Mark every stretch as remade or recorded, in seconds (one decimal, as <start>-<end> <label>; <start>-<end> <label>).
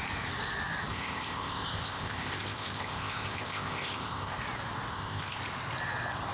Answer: 0.0-0.9 recorded; 0.9-4.4 remade; 4.4-4.9 recorded; 4.9-5.4 remade; 5.4-6.3 recorded